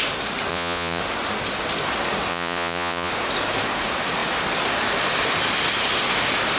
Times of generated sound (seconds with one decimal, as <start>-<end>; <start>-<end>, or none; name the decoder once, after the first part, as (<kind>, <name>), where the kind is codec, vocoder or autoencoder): 0.5-1.0 (vocoder, Vocos); 2.3-3.1

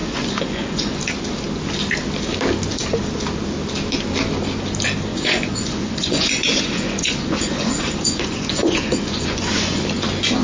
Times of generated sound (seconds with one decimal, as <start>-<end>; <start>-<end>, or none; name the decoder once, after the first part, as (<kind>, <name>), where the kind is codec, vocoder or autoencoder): 0.0-1.0 (vocoder, Vocos); 5.1-9.8

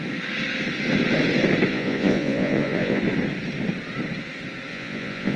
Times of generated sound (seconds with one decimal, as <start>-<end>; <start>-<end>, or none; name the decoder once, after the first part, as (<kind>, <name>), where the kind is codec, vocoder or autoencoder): 1.7-3.0 (vocoder, Vocos); 4.7-5.4

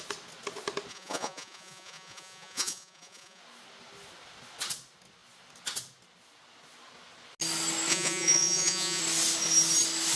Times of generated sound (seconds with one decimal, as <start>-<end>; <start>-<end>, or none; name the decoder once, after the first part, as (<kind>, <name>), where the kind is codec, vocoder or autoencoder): 0.9-3.4 (vocoder, Vocos); 7.9-9.0

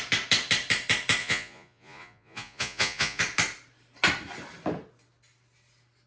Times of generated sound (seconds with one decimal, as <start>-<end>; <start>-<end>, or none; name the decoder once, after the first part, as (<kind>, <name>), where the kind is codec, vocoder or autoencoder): 1.2-3.2 (vocoder, Vocos)

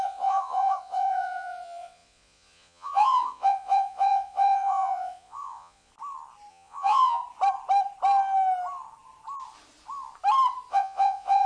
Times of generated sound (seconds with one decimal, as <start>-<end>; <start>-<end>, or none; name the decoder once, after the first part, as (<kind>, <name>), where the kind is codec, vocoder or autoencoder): 0.0-5.9 (vocoder, Vocos); 6.5-7.2; 10.7-11.5

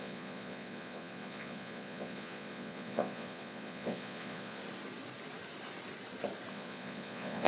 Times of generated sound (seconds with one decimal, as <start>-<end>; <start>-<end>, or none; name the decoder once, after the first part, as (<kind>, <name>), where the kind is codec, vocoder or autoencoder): 0.0-4.6 (vocoder, Vocos); 6.5-7.5

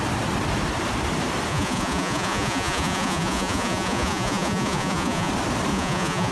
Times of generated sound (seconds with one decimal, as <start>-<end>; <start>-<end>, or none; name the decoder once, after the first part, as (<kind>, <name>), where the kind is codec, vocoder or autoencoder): 1.5-5.3 (vocoder, Vocos); 5.7-6.3